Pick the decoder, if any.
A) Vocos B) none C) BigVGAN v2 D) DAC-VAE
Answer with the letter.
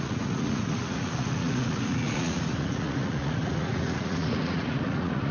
A